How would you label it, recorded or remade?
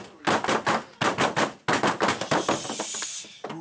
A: recorded